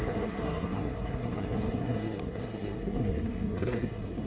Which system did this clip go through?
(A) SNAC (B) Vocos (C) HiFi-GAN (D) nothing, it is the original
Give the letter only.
A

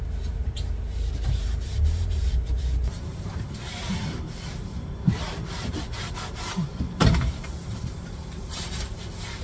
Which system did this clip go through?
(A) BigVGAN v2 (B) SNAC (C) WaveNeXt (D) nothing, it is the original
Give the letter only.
A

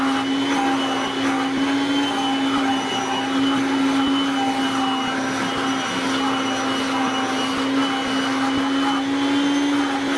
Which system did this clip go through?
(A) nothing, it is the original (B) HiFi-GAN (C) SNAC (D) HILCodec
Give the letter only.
A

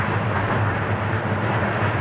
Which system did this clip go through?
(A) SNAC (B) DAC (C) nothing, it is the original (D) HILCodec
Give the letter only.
C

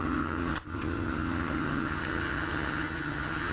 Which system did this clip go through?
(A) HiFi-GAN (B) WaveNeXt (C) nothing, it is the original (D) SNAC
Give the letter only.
A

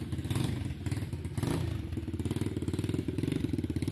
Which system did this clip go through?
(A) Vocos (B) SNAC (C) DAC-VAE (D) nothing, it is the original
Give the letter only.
D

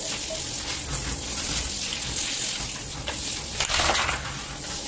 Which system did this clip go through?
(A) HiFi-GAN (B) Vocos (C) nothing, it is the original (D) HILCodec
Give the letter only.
C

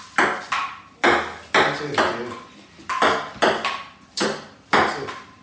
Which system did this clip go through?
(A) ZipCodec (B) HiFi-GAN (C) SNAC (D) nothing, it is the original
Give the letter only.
D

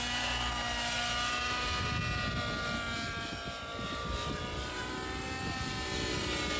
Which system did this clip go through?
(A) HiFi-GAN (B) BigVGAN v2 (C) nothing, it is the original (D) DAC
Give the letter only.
C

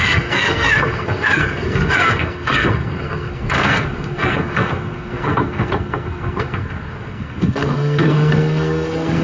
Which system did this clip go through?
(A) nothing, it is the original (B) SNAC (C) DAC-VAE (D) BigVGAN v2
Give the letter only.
B